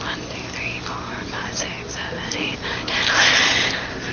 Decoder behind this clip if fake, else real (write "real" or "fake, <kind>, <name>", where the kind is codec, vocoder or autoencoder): real